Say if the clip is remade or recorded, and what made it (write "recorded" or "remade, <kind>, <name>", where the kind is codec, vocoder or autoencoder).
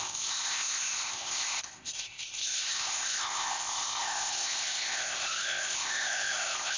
remade, codec, ZipCodec